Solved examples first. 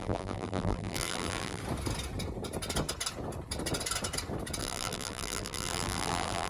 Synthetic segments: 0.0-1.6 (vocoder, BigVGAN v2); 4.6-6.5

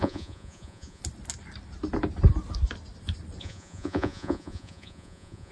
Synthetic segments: 0.0-1.0 (vocoder, Vocos); 3.4-5.5

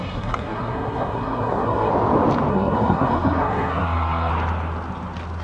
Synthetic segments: 0.0-1.9 (codec, SNAC); 2.5-4.3

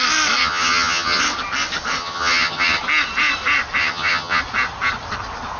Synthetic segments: 0.4-1.2 (vocoder, HiFi-GAN); 2.0-2.8; 3.8-4.4

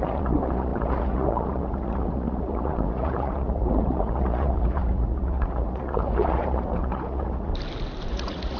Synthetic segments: 0.0-7.5 (vocoder, Vocos); 8.1-8.6